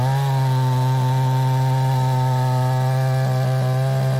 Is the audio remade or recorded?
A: recorded